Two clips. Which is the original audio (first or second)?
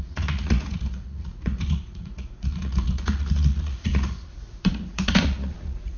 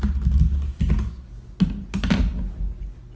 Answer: second